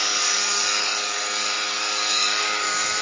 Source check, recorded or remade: remade